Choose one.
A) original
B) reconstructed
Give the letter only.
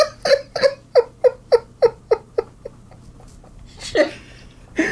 A